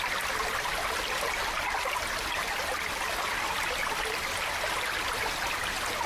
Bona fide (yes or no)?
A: yes